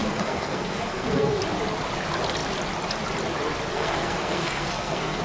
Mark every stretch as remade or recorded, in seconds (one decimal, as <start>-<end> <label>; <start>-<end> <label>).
0.0-1.4 remade; 1.4-3.7 recorded; 3.7-5.2 remade